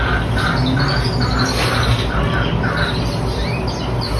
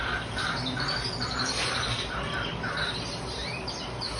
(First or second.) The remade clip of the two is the second